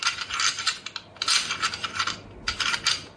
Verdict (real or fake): real